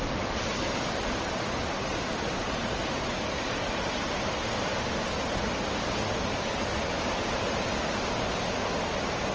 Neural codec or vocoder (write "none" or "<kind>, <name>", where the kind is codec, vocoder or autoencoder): none